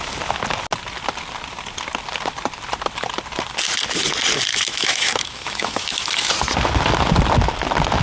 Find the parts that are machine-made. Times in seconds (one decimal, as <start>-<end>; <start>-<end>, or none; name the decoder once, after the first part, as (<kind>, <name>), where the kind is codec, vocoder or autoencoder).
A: 4.5-6.3 (autoencoder, DAC-VAE)